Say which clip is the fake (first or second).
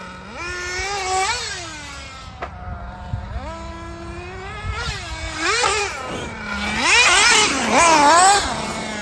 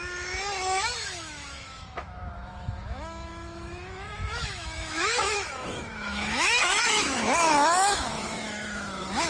second